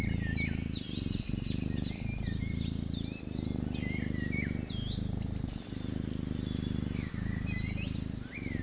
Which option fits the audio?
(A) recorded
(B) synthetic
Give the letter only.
A